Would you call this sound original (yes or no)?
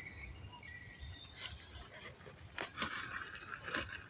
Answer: yes